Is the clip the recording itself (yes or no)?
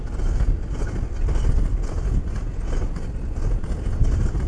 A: yes